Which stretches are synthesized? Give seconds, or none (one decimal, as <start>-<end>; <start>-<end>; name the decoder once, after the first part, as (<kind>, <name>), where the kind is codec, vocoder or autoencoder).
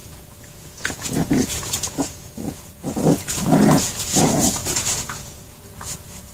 0.0-6.3 (vocoder, Vocos)